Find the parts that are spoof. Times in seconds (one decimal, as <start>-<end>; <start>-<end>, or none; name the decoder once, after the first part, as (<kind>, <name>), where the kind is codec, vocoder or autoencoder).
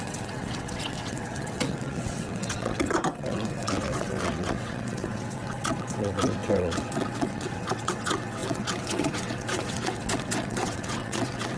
0.0-11.6 (vocoder, WaveNeXt)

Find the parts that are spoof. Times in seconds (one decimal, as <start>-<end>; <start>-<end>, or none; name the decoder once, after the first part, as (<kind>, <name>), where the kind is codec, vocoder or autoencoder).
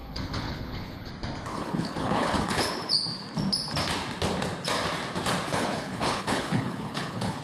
0.0-1.1 (codec, HILCodec); 1.5-2.9; 5.5-7.4